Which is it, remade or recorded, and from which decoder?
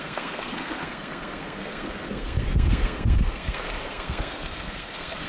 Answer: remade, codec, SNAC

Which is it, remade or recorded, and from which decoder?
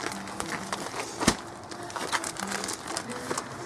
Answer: recorded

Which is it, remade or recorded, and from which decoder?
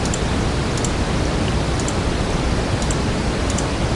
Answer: recorded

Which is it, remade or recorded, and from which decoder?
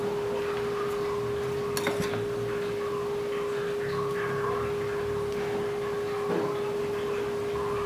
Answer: recorded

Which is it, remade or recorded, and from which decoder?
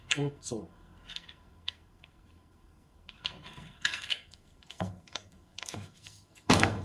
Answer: remade, codec, SNAC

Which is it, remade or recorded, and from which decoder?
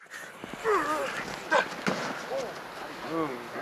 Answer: recorded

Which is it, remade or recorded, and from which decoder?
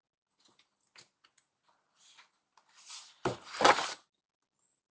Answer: recorded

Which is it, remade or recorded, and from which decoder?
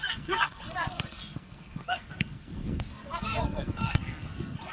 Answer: remade, codec, SNAC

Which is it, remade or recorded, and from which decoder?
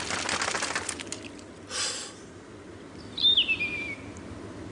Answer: recorded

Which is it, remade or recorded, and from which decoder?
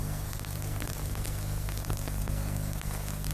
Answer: remade, codec, SNAC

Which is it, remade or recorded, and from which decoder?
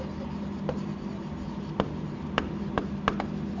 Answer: recorded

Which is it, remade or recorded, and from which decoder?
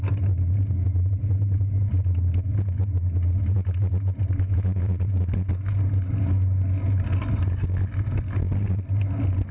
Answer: recorded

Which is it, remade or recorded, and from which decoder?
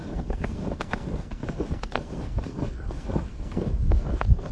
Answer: remade, codec, SNAC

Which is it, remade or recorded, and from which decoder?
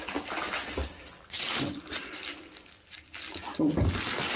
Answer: recorded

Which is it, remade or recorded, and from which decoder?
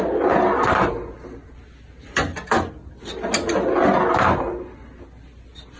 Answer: recorded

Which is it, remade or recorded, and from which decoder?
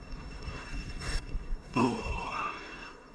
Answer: remade, codec, SNAC